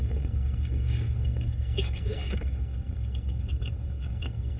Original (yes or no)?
no